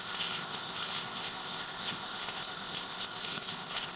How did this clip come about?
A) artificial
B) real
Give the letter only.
A